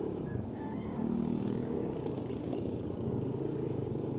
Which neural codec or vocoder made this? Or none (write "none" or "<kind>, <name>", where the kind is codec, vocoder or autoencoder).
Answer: codec, DAC